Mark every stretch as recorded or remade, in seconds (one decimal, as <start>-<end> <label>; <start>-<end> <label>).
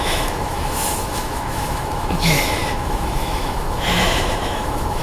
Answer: 0.0-5.0 remade